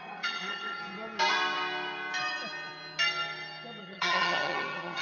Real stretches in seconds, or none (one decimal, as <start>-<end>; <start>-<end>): 0.8-3.8